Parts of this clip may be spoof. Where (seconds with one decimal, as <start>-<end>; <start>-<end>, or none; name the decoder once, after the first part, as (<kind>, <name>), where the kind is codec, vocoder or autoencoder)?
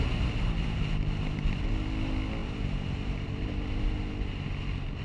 2.4-3.5 (vocoder, BigVGAN v2)